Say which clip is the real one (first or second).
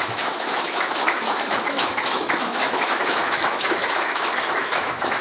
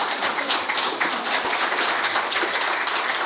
second